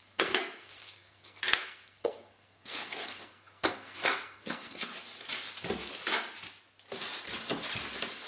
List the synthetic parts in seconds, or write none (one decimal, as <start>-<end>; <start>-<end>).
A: 0.0-4.9